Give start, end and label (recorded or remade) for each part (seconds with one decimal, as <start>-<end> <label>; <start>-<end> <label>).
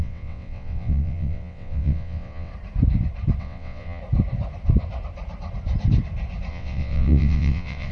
0.0-2.5 remade; 2.5-3.4 recorded; 3.4-4.0 remade; 4.0-6.5 recorded; 6.5-7.9 remade